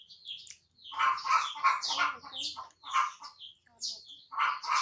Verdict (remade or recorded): recorded